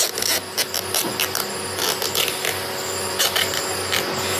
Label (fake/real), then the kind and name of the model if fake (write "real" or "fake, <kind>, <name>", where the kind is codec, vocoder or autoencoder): real